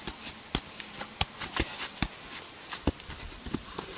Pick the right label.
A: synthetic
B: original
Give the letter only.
B